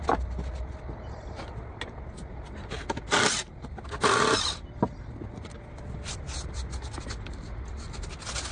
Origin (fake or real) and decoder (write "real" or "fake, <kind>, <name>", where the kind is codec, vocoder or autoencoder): real